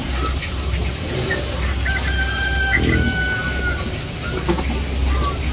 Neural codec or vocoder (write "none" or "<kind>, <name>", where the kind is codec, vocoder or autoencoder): none